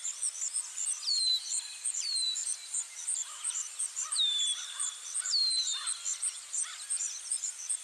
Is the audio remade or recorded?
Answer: remade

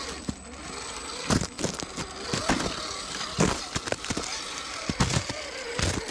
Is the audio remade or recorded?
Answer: recorded